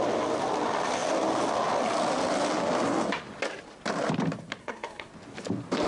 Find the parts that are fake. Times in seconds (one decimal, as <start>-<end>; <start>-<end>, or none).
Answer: 4.6-5.1